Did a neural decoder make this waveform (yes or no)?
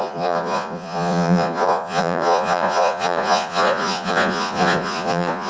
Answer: yes